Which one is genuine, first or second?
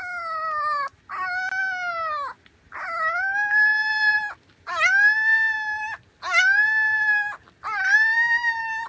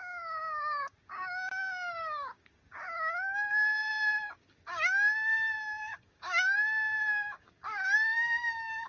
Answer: first